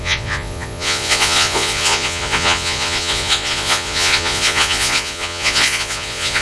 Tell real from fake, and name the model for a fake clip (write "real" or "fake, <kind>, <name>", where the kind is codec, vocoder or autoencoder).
fake, vocoder, Vocos